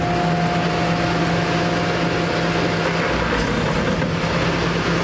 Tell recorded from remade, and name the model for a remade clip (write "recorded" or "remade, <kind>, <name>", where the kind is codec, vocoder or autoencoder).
recorded